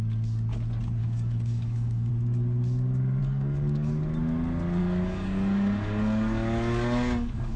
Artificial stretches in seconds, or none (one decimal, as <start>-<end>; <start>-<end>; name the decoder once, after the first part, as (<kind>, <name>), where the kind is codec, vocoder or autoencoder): 1.0-2.1 (codec, DAC); 3.2-3.9; 4.8-7.6